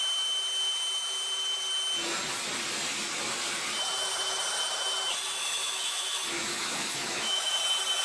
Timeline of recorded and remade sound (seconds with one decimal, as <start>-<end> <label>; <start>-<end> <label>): 0.0-5.4 recorded; 5.4-7.5 remade; 7.5-8.0 recorded